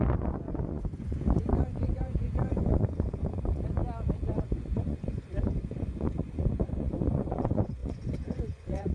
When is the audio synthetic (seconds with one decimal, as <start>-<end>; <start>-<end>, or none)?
0.0-3.8; 4.3-8.9